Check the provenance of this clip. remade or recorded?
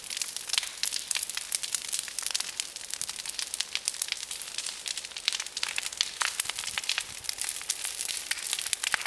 recorded